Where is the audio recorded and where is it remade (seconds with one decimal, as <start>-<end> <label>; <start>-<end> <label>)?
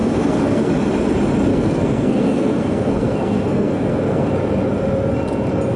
0.0-0.7 remade; 0.7-1.5 recorded; 1.5-4.3 remade; 4.3-5.8 recorded